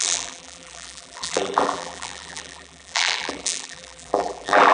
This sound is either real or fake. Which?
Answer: fake